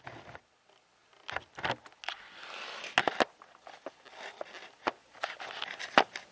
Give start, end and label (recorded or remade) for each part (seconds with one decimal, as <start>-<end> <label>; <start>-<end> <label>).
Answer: 0.0-6.3 recorded